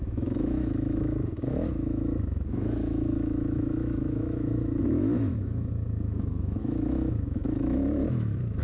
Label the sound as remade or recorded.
remade